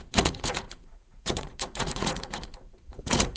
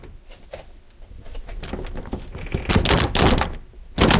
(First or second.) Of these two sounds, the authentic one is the second